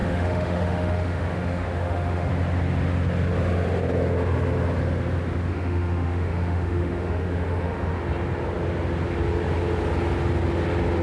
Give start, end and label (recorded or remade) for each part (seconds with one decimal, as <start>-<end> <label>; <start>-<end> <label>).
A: 0.0-2.3 remade; 2.3-5.5 recorded; 5.5-8.0 remade; 8.0-11.0 recorded